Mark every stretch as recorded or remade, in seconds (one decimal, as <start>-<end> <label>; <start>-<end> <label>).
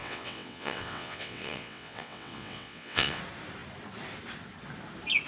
0.0-3.2 remade; 3.2-5.3 recorded